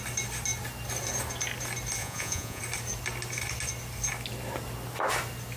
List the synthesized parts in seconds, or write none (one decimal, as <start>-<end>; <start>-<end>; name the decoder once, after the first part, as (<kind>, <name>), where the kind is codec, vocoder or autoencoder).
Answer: 2.0-2.6 (vocoder, Vocos)